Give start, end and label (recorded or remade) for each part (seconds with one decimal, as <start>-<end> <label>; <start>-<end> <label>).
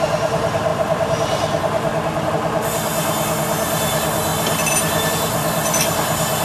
0.0-0.7 recorded; 0.7-2.3 remade; 2.3-6.4 recorded